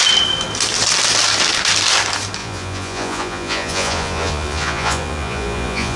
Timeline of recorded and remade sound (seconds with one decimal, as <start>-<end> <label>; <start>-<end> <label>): 0.0-2.4 recorded; 2.4-6.0 remade